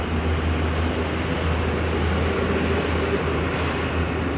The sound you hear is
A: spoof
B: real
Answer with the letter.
B